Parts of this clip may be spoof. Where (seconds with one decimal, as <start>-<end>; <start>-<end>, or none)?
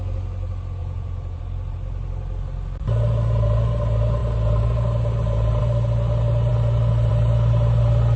0.8-1.4